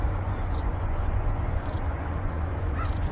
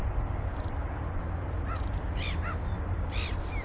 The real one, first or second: second